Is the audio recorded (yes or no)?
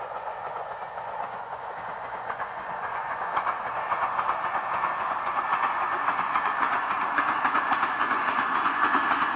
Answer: no